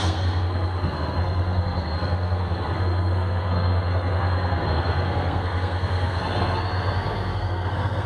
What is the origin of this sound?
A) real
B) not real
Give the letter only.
B